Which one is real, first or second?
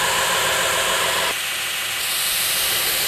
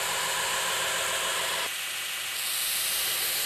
second